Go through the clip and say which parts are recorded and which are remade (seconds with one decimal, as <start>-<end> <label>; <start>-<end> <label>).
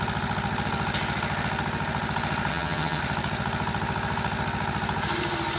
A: 0.0-2.5 recorded; 2.5-3.0 remade; 3.0-5.6 recorded